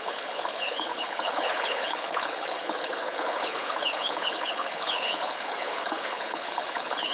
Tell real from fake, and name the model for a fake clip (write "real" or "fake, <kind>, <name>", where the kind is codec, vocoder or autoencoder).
fake, codec, HILCodec